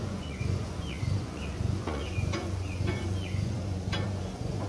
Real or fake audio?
fake